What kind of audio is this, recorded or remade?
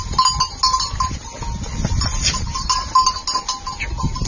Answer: recorded